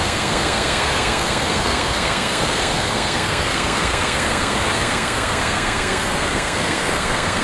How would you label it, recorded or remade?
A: remade